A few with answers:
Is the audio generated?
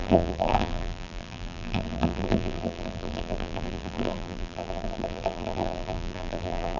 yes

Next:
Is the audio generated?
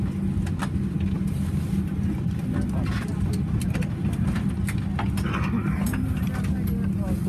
no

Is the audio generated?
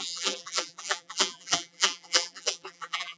yes